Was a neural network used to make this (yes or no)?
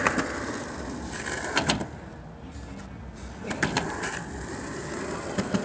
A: no